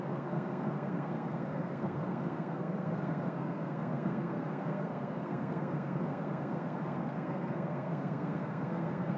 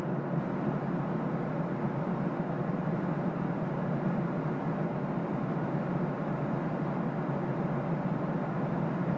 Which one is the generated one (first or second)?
first